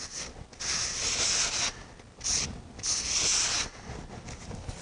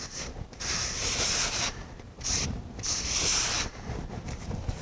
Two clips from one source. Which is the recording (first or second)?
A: first